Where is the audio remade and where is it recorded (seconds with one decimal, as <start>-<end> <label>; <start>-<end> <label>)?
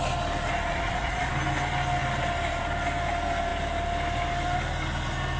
0.0-0.7 recorded; 0.7-1.3 remade; 1.3-5.4 recorded